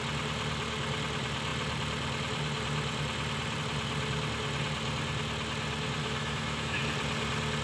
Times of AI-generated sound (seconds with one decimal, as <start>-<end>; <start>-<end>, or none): 6.0-6.8